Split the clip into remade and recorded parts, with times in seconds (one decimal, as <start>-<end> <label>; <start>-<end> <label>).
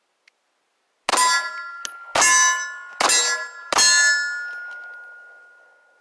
0.0-6.0 recorded